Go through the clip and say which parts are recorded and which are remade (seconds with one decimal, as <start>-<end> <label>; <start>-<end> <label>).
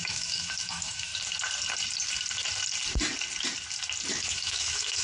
0.0-1.1 remade; 1.1-4.1 recorded; 4.1-5.0 remade